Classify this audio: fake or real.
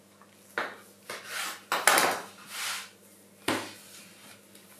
real